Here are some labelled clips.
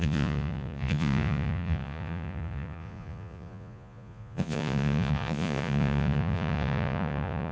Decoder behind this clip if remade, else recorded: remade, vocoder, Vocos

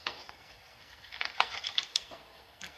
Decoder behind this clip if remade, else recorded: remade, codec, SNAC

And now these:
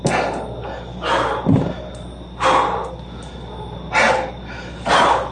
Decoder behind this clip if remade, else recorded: recorded